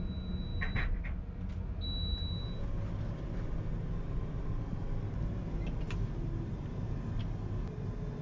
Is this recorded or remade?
recorded